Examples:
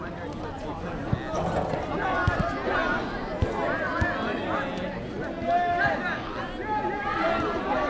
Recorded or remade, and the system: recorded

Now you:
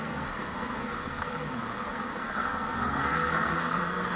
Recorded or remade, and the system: remade, codec, SNAC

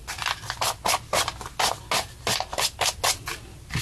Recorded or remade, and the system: recorded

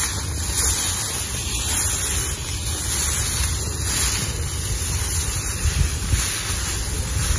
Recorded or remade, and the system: recorded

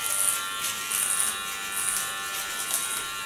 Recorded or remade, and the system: recorded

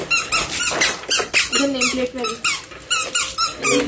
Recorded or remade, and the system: recorded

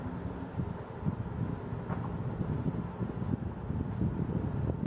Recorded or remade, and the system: recorded